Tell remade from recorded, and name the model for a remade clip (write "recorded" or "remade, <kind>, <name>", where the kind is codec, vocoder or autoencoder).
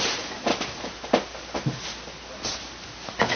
recorded